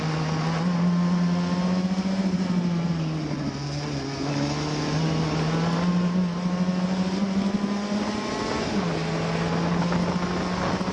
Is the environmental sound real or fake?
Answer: real